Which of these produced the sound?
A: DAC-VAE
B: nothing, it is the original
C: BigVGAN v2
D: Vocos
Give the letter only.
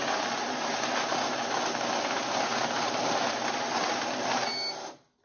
B